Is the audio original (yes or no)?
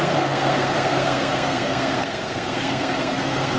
no